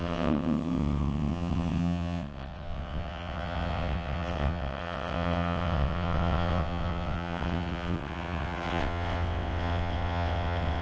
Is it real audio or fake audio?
fake